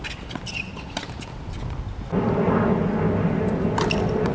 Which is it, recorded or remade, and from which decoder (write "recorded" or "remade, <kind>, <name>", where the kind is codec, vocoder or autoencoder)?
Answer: recorded